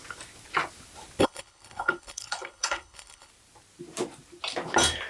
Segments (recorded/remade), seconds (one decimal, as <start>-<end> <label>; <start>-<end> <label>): 0.0-1.2 recorded; 1.2-3.3 remade; 3.3-5.1 recorded